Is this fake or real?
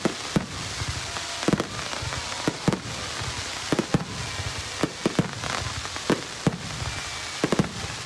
real